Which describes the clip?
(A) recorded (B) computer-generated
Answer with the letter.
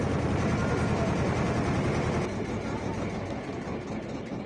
A